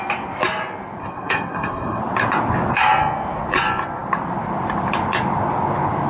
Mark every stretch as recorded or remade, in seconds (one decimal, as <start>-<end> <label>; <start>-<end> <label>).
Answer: 0.0-1.0 recorded; 1.0-2.0 remade; 2.0-6.1 recorded